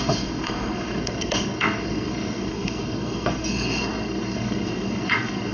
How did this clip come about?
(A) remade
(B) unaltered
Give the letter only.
A